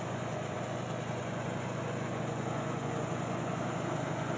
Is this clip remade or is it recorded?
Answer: remade